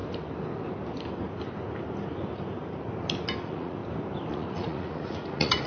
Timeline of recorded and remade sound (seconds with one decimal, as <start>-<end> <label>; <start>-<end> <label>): 0.0-3.4 recorded; 3.4-3.8 remade; 3.8-4.3 recorded; 4.3-5.7 remade

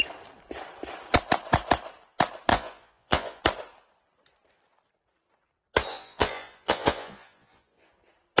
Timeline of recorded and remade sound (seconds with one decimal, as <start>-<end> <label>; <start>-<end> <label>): 0.0-2.5 recorded; 2.5-3.4 remade; 3.4-5.9 recorded; 5.9-7.9 remade; 7.9-8.4 recorded

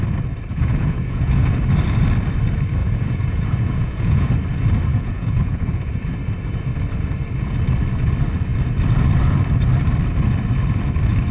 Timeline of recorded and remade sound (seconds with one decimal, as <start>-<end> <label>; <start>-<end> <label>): 0.0-0.5 recorded; 0.5-1.6 remade; 1.6-2.8 recorded; 2.8-4.3 remade; 4.3-4.9 recorded; 4.9-5.9 remade; 5.9-11.3 recorded

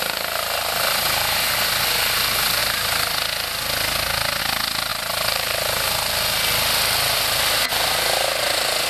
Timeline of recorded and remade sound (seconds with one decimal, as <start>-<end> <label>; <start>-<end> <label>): 0.0-8.9 recorded

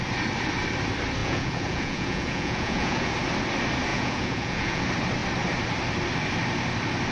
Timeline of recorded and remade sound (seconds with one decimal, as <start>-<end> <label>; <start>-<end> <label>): 0.0-1.2 recorded; 1.2-3.1 remade; 3.1-3.9 recorded; 3.9-4.8 remade; 4.8-7.1 recorded

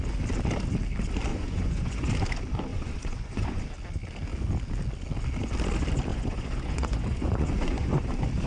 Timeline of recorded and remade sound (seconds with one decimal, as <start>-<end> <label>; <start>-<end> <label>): 0.0-1.3 recorded; 1.3-2.1 remade; 2.1-2.7 recorded; 2.7-3.6 remade; 3.6-6.1 recorded; 6.1-8.1 remade; 8.1-8.5 recorded

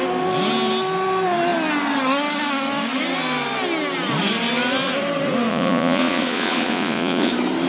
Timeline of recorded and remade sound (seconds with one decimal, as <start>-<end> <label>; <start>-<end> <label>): 0.0-5.5 recorded; 5.5-7.3 remade; 7.3-7.7 recorded